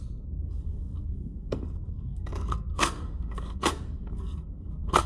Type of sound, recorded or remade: remade